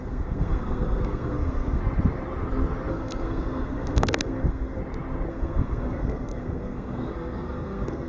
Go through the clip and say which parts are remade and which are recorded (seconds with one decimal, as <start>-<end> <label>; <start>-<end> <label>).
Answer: 0.0-1.8 remade; 1.8-2.9 recorded; 2.9-4.8 remade; 4.8-5.3 recorded; 5.3-8.1 remade